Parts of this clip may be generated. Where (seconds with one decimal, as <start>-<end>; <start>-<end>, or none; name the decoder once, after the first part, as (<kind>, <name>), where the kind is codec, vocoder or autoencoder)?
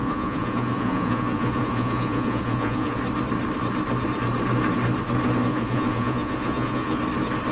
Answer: 0.0-3.0 (vocoder, Vocos); 5.5-7.0